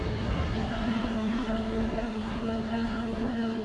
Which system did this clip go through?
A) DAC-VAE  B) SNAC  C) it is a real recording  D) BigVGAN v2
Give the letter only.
B